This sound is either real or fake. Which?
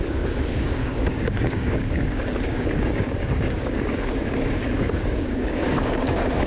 fake